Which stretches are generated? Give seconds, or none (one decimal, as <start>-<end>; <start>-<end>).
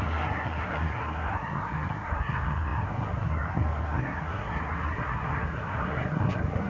0.0-6.7